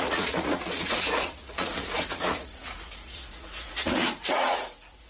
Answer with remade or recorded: remade